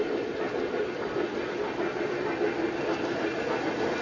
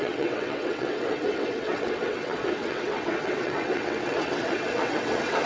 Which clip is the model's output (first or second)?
second